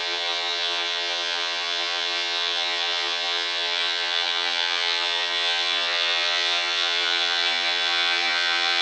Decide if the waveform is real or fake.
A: fake